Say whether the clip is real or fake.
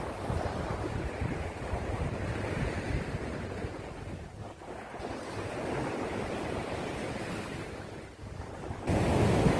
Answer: real